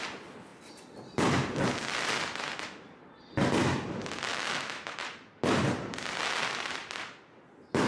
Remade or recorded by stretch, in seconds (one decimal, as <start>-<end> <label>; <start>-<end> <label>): 0.0-4.3 recorded; 4.3-5.0 remade; 5.0-7.9 recorded